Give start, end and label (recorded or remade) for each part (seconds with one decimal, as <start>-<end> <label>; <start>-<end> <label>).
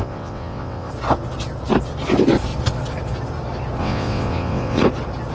0.0-0.9 remade; 0.9-3.8 recorded; 3.8-4.8 remade; 4.8-5.3 recorded